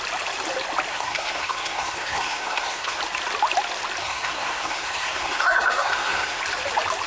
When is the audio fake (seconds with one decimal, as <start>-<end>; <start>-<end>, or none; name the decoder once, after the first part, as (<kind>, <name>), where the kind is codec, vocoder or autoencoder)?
0.9-3.0 (codec, SNAC); 4.0-6.4

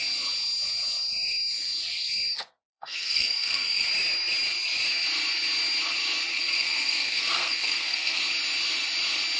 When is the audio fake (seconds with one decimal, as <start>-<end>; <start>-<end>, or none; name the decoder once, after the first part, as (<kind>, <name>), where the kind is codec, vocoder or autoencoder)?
2.7-3.9 (codec, SNAC); 6.3-8.2

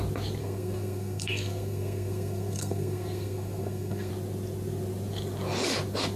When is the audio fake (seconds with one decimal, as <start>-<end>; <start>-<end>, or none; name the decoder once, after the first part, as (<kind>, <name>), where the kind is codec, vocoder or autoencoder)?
0.4-4.1 (codec, SNAC)